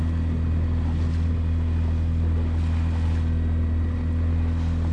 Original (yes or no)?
yes